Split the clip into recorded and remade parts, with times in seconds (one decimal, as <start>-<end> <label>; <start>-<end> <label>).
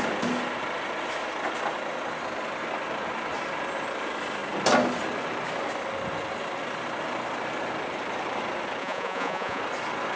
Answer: 0.0-8.8 recorded; 8.8-9.6 remade; 9.6-10.2 recorded